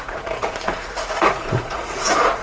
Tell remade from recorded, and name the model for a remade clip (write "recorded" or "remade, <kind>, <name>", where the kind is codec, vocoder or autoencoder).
remade, vocoder, Vocos